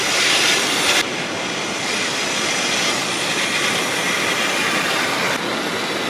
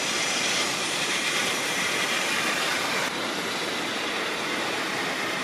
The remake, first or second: second